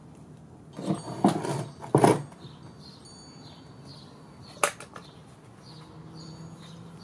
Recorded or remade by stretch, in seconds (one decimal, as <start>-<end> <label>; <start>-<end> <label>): 0.0-7.0 recorded